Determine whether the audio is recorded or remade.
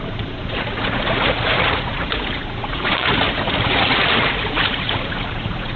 remade